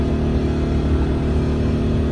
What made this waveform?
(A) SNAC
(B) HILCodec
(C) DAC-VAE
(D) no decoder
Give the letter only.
D